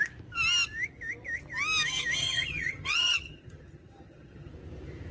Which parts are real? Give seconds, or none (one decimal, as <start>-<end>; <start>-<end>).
0.0-2.2; 4.5-5.1